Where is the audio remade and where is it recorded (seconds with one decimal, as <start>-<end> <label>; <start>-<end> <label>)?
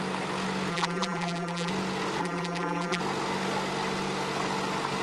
0.0-0.7 recorded; 0.7-1.7 remade; 1.7-2.2 recorded; 2.2-3.0 remade; 3.0-5.0 recorded